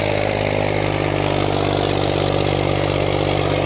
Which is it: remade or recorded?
remade